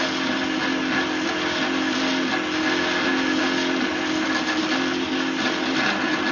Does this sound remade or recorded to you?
recorded